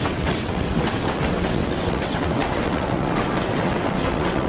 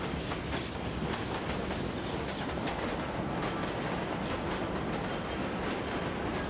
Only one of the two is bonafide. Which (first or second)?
second